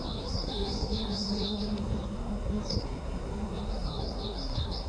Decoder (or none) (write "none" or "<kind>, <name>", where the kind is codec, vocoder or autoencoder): codec, SNAC